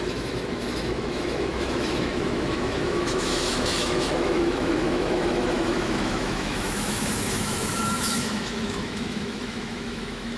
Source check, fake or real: fake